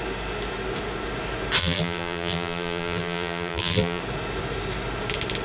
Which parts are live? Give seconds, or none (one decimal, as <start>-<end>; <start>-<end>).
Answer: 0.0-1.6; 4.0-5.4